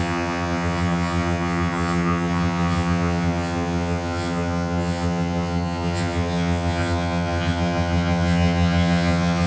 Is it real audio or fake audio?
fake